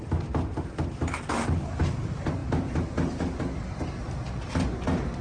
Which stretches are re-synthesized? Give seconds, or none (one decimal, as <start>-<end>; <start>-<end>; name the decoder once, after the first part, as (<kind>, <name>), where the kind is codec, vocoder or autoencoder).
none